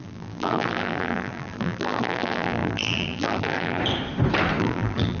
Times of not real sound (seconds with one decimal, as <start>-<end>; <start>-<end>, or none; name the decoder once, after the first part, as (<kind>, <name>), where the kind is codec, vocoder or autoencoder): 0.0-3.8 (vocoder, BigVGAN v2); 4.6-5.2